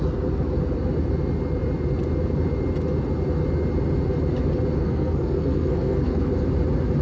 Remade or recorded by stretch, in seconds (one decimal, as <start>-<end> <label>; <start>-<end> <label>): 0.0-4.8 recorded; 4.8-6.3 remade; 6.3-7.0 recorded